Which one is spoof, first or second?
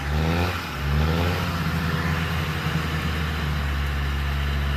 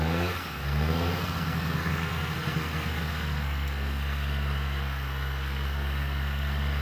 second